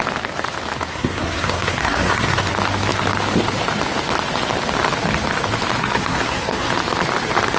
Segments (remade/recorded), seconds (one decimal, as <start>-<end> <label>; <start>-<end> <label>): 0.0-0.9 recorded; 0.9-2.5 remade; 2.5-5.8 recorded; 5.8-6.7 remade; 6.7-7.6 recorded